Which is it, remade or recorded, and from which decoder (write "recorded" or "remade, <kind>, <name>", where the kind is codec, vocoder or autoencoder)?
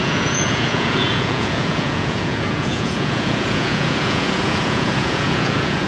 remade, vocoder, Vocos